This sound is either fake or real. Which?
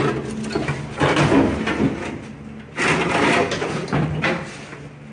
real